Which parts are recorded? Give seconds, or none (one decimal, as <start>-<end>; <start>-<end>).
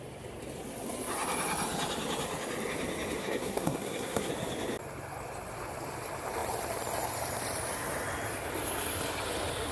0.0-3.2; 4.3-9.7